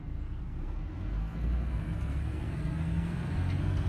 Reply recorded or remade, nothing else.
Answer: remade